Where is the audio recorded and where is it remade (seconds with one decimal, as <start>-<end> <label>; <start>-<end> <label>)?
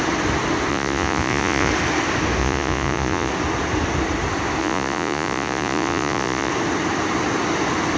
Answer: 0.0-0.7 recorded; 0.7-1.7 remade; 1.7-2.4 recorded; 2.4-3.3 remade; 3.3-4.6 recorded; 4.6-6.5 remade; 6.5-8.0 recorded